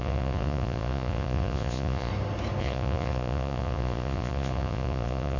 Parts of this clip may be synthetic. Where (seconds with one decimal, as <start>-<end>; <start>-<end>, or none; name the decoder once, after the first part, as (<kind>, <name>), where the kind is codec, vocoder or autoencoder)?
0.0-2.1 (vocoder, Vocos); 2.6-5.4